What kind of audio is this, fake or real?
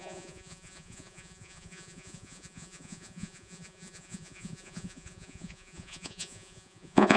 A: fake